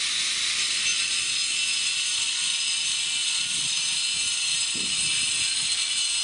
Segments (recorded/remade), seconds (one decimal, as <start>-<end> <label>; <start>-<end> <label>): 0.0-6.2 recorded